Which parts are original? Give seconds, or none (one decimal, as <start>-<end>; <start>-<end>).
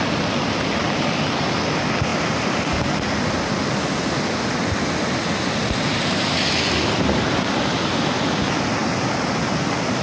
0.0-10.0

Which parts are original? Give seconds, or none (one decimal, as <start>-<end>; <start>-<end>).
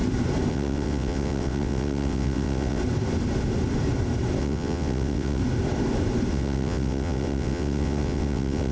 0.0-0.5; 2.8-4.4; 5.4-6.3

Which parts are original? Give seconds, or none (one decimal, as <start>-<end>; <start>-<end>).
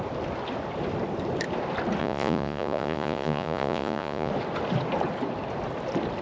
0.0-2.0; 4.3-6.2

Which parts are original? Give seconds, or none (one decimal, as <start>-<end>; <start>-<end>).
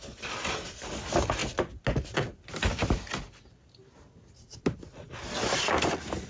0.0-6.3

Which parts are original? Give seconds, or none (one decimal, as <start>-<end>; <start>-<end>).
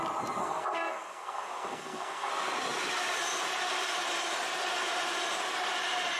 0.0-0.4; 2.3-6.2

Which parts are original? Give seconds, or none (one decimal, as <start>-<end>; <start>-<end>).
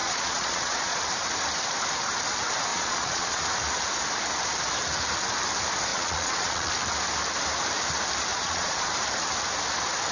1.0-2.7; 3.4-5.9; 6.7-8.3; 8.9-10.1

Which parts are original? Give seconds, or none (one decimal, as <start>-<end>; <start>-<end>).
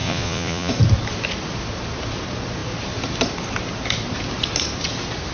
0.7-5.3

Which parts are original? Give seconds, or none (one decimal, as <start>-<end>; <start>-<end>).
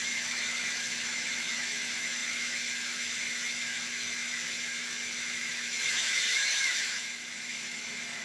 none